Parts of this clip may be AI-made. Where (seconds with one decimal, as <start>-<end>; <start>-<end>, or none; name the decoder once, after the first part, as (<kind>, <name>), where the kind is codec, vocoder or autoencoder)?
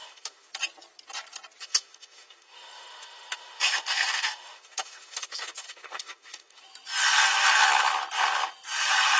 0.0-0.5 (autoencoder, DAC-VAE); 1.6-6.6